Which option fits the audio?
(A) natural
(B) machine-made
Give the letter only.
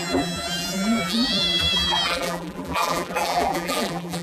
B